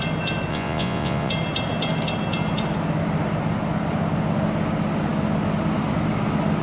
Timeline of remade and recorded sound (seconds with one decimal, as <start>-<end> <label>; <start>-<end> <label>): 0.0-0.5 recorded; 0.5-1.3 remade; 1.3-6.6 recorded